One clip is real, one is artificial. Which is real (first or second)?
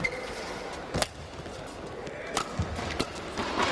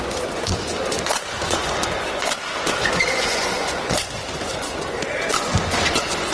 first